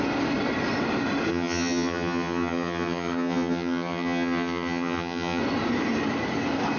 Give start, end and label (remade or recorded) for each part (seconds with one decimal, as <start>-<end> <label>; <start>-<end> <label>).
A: 0.0-1.3 recorded; 1.3-5.4 remade; 5.4-6.8 recorded